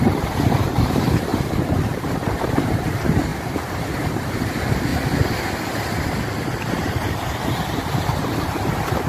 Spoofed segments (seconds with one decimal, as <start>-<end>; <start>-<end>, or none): 0.0-3.3; 4.2-4.9; 6.7-9.1